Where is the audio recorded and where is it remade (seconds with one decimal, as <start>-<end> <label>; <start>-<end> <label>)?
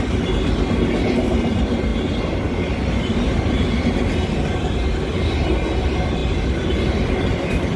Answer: 0.0-7.8 recorded